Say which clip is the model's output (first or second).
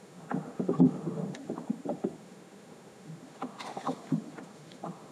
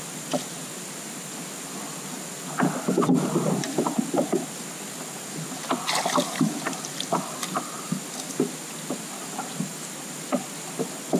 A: first